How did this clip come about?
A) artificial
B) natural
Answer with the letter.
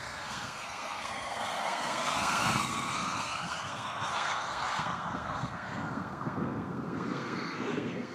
A